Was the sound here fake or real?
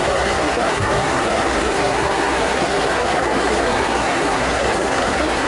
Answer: fake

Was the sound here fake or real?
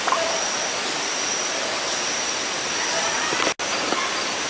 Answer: real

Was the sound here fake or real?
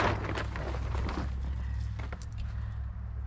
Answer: real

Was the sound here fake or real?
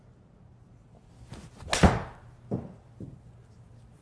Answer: real